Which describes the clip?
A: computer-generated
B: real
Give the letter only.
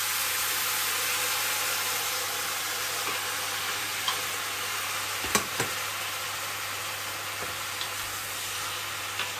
B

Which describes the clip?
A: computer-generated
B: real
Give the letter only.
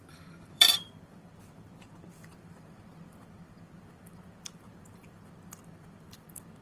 A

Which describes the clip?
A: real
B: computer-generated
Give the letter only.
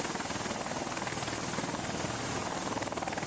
A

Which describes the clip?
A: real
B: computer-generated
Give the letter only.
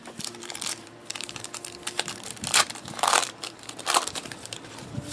B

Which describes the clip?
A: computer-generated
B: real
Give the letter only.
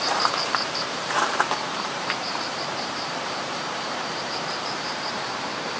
A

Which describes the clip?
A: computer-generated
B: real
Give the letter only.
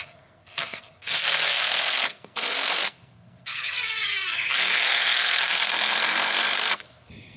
A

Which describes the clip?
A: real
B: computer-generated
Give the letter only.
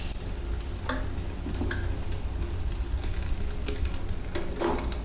A